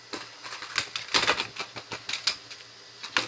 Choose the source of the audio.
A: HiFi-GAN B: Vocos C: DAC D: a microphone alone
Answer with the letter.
D